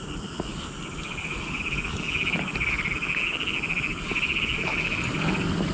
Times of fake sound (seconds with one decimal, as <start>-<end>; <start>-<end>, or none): none